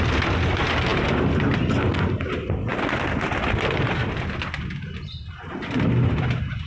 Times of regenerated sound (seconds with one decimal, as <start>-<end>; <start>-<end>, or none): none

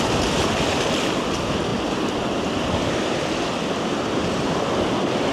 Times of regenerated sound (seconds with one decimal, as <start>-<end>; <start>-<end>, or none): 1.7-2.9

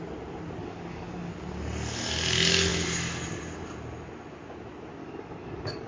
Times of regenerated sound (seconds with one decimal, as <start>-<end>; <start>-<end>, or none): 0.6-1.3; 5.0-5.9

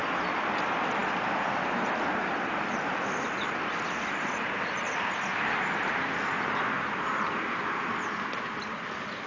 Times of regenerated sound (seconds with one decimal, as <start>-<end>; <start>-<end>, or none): none